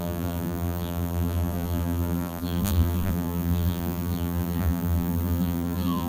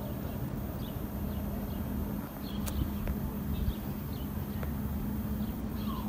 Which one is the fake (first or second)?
first